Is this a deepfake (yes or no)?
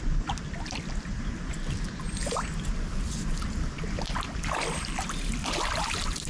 no